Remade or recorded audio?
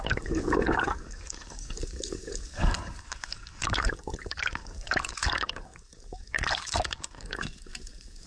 remade